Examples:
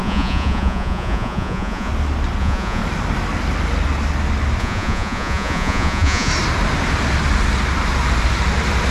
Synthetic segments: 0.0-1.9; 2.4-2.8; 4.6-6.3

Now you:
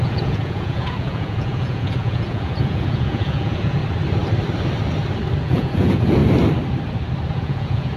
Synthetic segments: 0.0-3.8; 5.4-6.2; 7.3-8.0

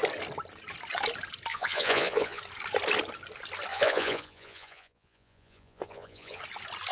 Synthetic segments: 1.5-2.4; 3.7-6.4

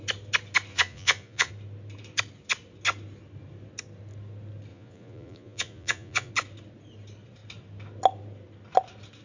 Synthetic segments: 0.7-1.5; 4.7-6.3